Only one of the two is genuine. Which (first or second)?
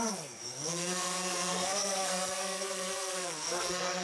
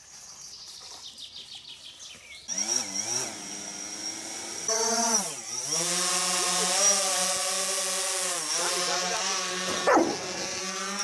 second